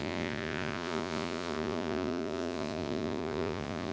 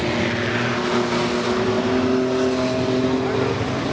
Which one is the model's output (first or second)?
first